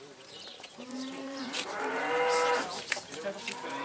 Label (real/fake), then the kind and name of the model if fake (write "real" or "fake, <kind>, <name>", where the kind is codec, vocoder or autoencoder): fake, vocoder, BigVGAN v2